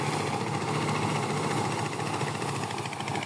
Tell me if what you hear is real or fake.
real